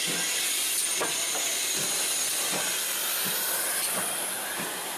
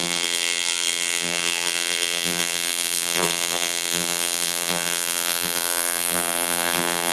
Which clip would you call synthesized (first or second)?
second